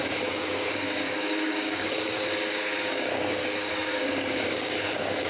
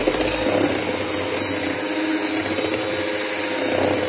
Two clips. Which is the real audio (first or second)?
second